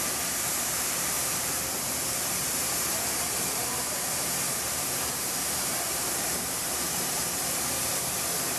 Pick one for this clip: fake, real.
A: fake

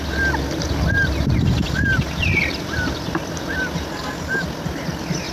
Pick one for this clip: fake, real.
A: real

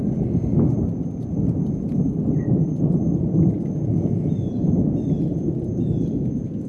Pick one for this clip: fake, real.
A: real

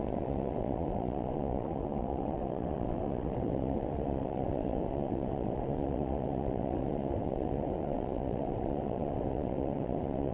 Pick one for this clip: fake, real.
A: fake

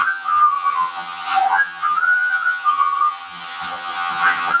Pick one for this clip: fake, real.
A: fake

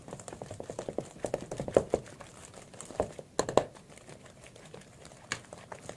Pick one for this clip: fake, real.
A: real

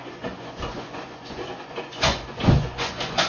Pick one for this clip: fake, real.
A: fake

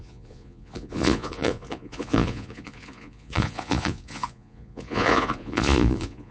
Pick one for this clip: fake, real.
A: fake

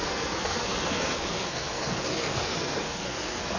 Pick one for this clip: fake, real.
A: fake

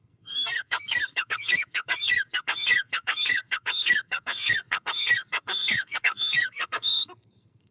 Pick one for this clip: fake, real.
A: fake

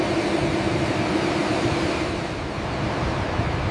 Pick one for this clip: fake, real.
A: real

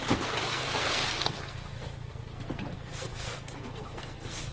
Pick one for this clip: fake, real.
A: fake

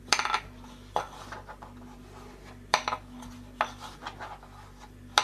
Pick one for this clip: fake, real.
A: real